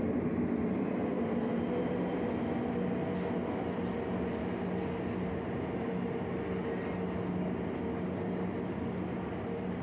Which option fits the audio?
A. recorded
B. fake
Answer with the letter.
A